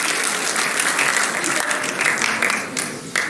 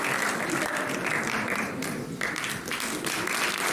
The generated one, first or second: second